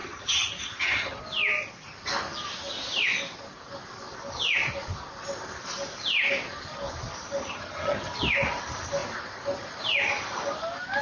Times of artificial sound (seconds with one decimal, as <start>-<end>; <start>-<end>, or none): 0.0-1.2; 7.4-8.2